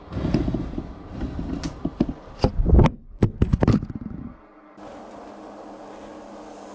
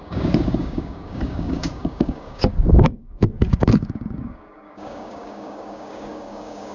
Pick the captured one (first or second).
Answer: first